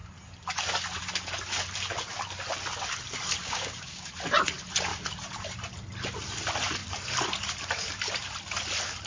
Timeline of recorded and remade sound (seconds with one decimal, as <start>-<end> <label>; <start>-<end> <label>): 0.0-3.4 recorded; 3.4-4.1 remade; 4.1-9.1 recorded